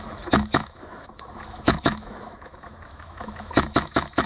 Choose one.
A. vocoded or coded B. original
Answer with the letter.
A